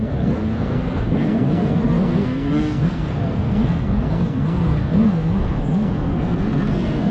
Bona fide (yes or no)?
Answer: no